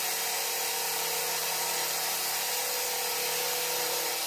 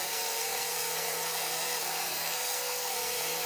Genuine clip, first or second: first